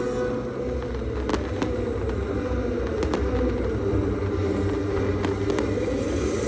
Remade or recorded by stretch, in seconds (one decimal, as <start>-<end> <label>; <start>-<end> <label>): 0.0-6.5 recorded